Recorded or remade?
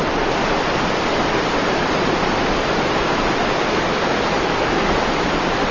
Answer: recorded